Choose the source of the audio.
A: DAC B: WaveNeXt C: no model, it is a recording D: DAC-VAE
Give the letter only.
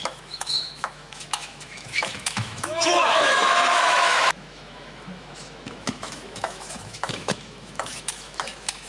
D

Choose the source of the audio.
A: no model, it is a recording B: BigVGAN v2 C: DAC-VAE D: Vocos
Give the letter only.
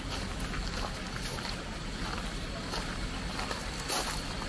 A